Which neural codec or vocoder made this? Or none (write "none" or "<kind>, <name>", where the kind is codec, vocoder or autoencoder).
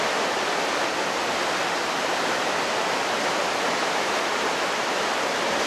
none